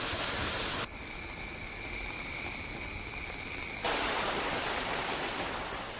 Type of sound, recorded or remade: recorded